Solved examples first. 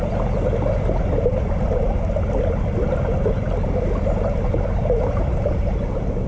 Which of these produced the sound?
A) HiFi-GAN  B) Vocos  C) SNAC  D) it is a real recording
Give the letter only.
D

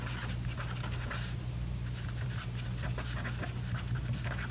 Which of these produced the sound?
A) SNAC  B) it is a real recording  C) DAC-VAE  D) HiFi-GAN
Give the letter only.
B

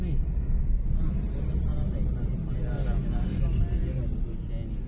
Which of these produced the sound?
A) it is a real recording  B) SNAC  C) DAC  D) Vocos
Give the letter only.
A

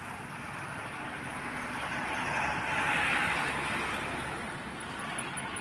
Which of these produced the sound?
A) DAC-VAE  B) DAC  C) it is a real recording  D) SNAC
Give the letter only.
C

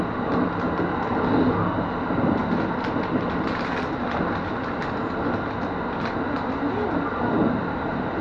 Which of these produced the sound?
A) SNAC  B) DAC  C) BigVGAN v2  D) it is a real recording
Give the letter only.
D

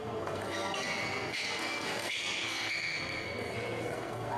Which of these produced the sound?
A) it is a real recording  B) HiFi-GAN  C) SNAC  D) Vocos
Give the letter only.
C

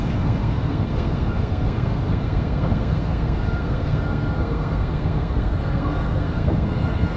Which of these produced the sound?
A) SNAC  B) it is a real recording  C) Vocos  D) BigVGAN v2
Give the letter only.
A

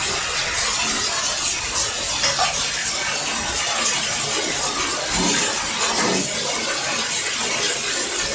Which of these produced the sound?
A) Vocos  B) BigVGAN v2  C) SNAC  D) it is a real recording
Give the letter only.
D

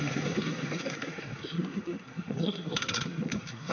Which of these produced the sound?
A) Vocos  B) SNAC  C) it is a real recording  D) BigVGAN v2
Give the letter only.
B